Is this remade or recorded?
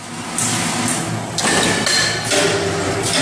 recorded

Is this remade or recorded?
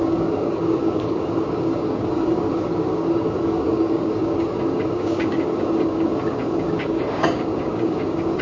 remade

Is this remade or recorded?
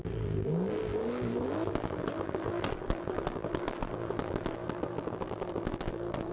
remade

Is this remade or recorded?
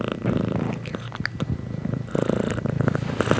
recorded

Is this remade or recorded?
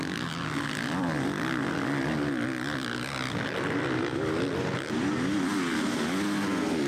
recorded